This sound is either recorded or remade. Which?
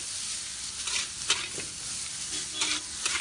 recorded